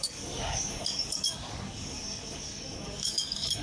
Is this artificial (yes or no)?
yes